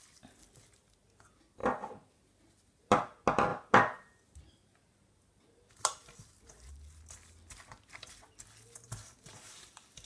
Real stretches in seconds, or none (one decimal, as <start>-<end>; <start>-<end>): 0.0-10.1

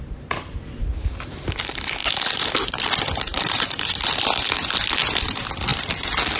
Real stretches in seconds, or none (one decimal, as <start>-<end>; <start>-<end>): 2.0-2.7

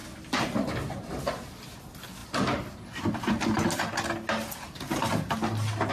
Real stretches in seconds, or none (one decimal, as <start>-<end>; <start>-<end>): 0.0-5.9

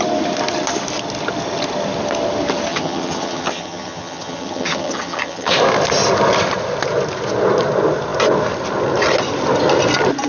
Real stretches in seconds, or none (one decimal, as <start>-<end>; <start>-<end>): 0.0-2.7; 5.5-10.3

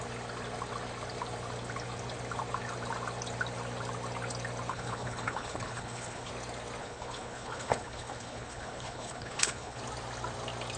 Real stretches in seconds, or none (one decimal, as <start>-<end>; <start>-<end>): 0.0-4.7; 6.3-6.8; 9.8-10.8

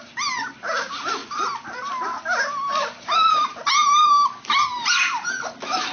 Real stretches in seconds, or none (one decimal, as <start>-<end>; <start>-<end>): 0.0-5.9